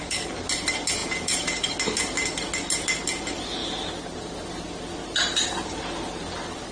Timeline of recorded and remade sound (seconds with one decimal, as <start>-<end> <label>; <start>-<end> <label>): 0.0-1.0 recorded; 1.0-1.6 remade; 1.6-6.7 recorded